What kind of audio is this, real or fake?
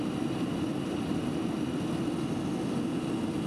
real